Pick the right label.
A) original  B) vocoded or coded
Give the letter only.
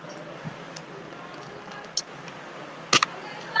A